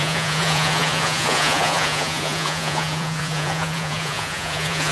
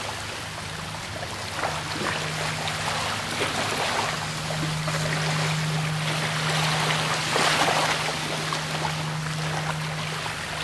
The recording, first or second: second